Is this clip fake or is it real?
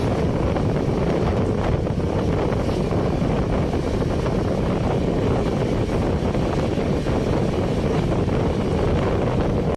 real